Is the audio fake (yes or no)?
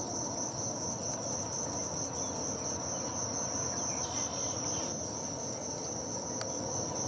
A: no